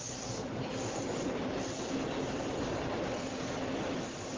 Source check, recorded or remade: recorded